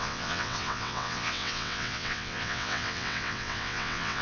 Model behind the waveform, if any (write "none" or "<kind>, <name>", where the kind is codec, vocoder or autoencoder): vocoder, WaveNeXt